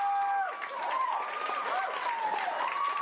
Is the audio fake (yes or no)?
no